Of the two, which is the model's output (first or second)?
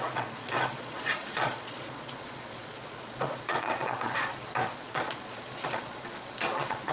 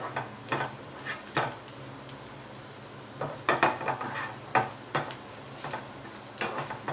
first